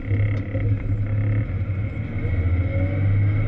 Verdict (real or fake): real